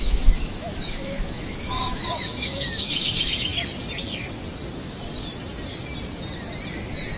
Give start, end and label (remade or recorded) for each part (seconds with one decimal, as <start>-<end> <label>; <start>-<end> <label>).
0.0-3.5 remade; 3.5-7.2 recorded

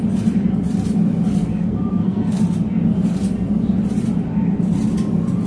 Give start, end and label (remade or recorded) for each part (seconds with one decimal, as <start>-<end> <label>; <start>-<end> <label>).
0.0-1.4 recorded; 1.4-2.4 remade; 2.4-5.5 recorded

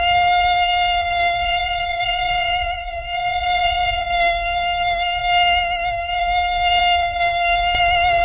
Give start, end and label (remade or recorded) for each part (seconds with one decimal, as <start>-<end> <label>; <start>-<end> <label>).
0.0-1.4 recorded; 1.4-4.0 remade; 4.0-8.2 recorded

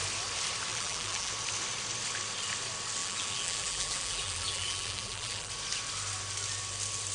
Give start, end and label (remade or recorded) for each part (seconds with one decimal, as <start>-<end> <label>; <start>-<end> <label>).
0.0-0.7 recorded; 0.7-1.3 remade; 1.3-3.0 recorded; 3.0-5.5 remade; 5.5-7.1 recorded

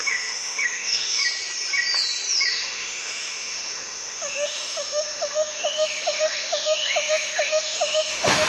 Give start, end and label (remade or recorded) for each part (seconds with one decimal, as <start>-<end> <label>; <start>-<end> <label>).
0.0-1.2 remade; 1.2-2.5 recorded; 2.5-8.5 remade

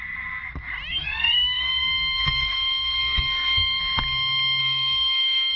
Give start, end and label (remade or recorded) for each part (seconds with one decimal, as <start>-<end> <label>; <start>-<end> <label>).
0.0-0.9 recorded; 0.9-3.8 remade; 3.8-4.6 recorded; 4.6-5.6 remade

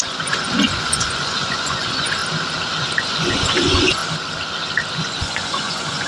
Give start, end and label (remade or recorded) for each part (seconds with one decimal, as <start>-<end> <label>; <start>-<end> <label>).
0.0-2.2 remade; 2.2-3.0 recorded; 3.0-4.0 remade; 4.0-4.9 recorded; 4.9-6.1 remade